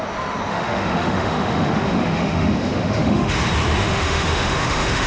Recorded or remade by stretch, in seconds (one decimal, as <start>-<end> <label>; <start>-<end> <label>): 0.0-0.5 recorded; 0.5-3.4 remade; 3.4-3.8 recorded; 3.8-5.1 remade